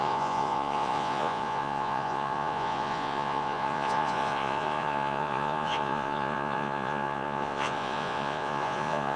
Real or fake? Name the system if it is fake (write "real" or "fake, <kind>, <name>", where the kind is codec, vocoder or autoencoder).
fake, vocoder, Vocos